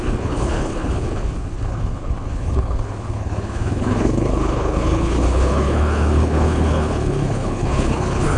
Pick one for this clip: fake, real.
fake